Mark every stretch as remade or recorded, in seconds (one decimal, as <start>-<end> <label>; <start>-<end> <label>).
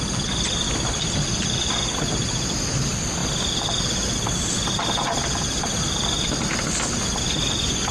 0.0-7.9 recorded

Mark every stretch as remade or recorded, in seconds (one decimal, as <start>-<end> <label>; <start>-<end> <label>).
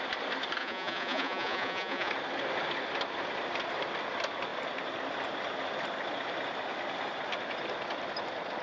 0.0-0.6 recorded; 0.6-2.1 remade; 2.1-8.6 recorded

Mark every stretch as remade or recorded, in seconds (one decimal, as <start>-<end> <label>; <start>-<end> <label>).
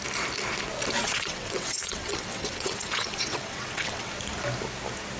0.0-1.0 recorded; 1.0-4.1 remade; 4.1-5.2 recorded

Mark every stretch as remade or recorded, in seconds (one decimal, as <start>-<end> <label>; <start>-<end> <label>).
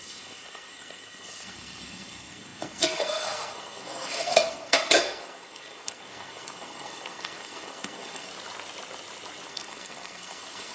0.0-8.3 remade; 8.3-9.5 recorded; 9.5-10.7 remade